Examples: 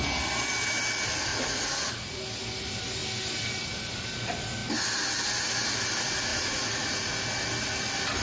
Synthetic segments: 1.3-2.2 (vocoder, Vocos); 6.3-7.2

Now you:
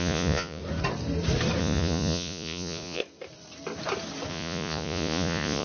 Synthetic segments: 0.0-0.6 (vocoder, Vocos); 1.6-3.0; 4.3-5.6

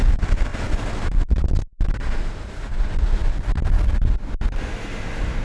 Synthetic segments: none

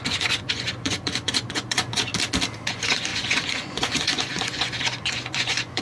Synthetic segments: 0.0-2.1 (vocoder, Vocos); 2.7-5.8

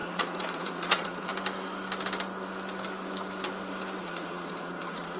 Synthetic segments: 0.0-1.3 (vocoder, Vocos); 4.0-5.2

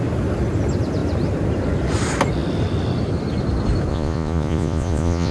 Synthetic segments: 3.9-5.3 (vocoder, Vocos)

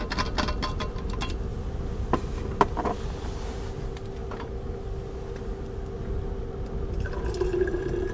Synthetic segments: none

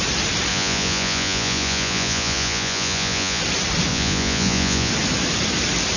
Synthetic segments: 0.5-3.4 (vocoder, Vocos); 3.9-4.9